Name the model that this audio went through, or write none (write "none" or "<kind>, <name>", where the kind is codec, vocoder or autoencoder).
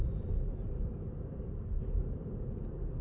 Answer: none